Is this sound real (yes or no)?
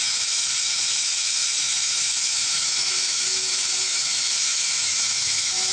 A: no